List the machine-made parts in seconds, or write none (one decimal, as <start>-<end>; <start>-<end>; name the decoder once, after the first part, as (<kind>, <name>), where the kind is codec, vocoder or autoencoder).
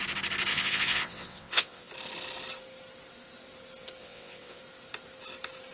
0.5-1.9 (vocoder, WaveNeXt); 4.0-4.6